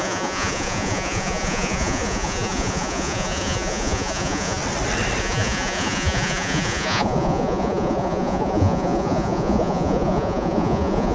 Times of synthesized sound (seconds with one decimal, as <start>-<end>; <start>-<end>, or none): 0.0-4.6; 5.2-11.1

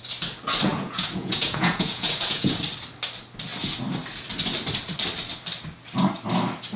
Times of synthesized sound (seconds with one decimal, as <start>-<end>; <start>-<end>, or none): 0.7-2.6

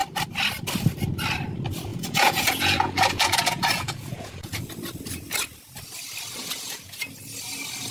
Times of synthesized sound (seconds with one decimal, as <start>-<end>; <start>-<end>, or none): 1.9-4.7; 6.4-7.0

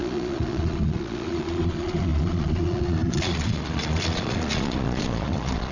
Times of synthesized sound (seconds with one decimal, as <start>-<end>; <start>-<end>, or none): 0.0-5.7